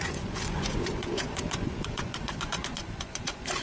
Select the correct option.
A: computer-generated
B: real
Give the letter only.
A